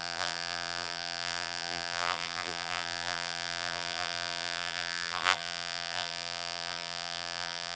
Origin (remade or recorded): remade